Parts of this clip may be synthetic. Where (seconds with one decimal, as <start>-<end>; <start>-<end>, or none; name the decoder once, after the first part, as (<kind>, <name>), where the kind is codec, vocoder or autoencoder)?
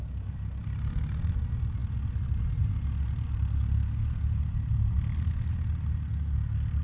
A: none